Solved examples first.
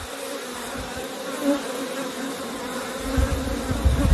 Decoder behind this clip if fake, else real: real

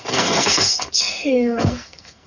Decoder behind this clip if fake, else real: fake, codec, SNAC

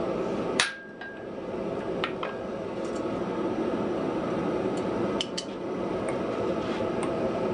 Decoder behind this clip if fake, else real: fake, vocoder, BigVGAN v2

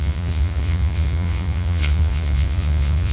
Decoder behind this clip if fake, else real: fake, vocoder, Vocos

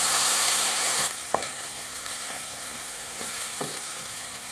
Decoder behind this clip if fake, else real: fake, codec, SNAC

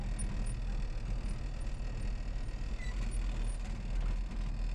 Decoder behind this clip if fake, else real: real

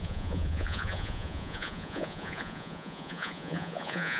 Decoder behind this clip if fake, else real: fake, vocoder, Vocos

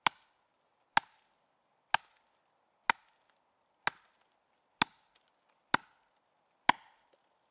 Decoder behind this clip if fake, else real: real